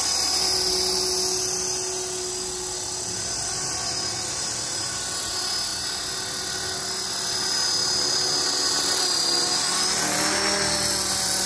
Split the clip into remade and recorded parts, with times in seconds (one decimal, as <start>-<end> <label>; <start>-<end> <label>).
0.0-11.5 recorded